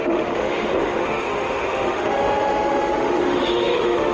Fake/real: fake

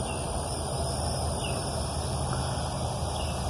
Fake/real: real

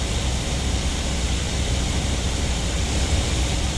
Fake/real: fake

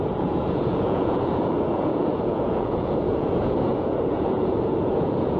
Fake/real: fake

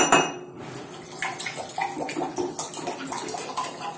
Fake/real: real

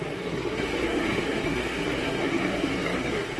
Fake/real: fake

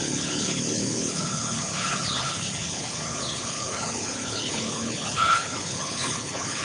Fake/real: fake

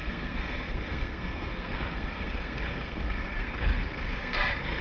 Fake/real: fake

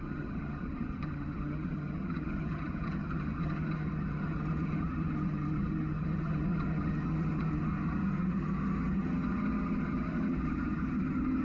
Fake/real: fake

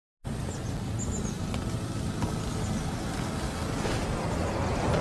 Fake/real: real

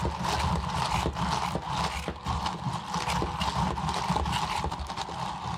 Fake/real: real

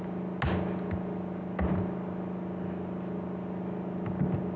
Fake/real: real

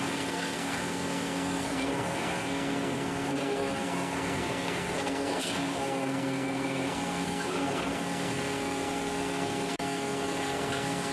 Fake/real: fake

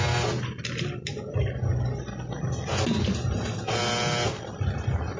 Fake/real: real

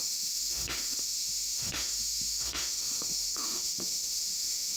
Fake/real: fake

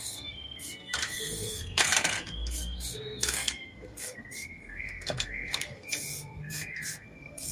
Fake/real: fake